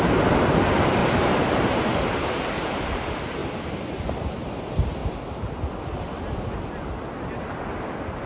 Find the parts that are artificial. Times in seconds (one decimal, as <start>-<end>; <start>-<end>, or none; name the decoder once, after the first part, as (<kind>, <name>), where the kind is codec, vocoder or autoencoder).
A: 1.0-3.0 (vocoder, BigVGAN v2); 3.4-4.4